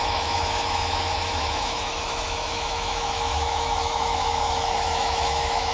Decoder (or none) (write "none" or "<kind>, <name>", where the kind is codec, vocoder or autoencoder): autoencoder, DAC-VAE